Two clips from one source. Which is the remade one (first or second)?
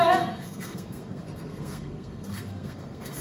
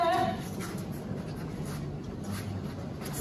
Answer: first